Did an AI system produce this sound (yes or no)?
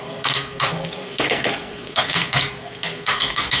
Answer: yes